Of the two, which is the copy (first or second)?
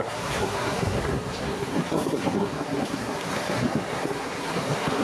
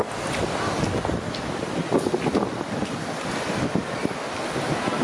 first